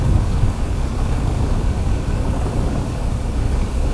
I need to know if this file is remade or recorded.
remade